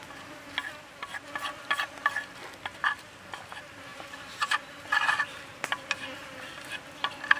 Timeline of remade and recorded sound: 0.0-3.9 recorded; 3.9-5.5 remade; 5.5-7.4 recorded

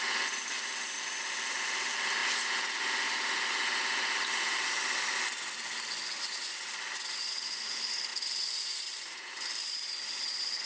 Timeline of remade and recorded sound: 0.0-2.2 remade; 2.2-6.2 recorded; 6.2-10.7 remade

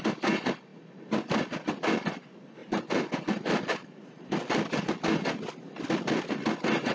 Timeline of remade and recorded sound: 0.0-2.6 recorded; 2.6-4.9 remade; 4.9-6.9 recorded

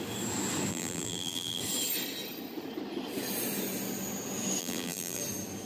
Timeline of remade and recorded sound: 0.0-0.7 recorded; 0.7-1.6 remade; 1.6-4.6 recorded; 4.6-5.2 remade; 5.2-5.7 recorded

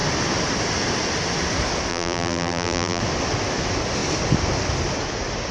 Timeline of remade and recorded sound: 0.0-1.9 recorded; 1.9-3.0 remade; 3.0-5.5 recorded

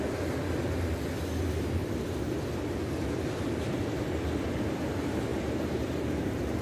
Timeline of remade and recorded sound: 0.0-1.8 recorded; 1.8-4.1 remade; 4.1-6.6 recorded